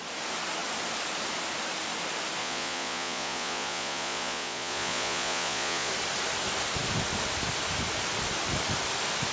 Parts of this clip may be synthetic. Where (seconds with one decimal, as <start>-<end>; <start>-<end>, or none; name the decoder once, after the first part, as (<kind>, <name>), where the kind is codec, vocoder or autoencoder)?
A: 2.4-5.9 (vocoder, Vocos)